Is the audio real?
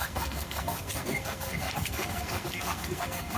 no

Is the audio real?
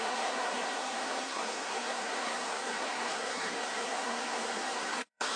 no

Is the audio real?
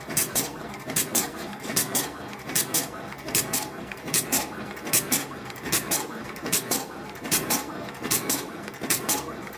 no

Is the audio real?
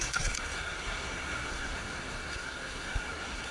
no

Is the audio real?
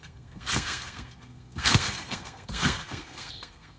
no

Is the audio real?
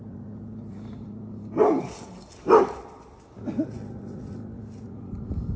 yes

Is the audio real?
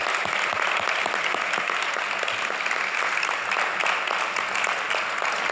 yes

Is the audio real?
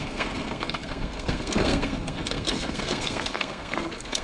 no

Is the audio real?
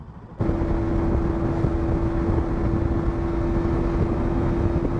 yes